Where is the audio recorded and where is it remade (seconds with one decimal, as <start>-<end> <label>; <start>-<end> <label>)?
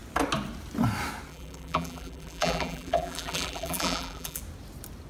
0.0-1.3 recorded; 1.3-4.4 remade; 4.4-5.1 recorded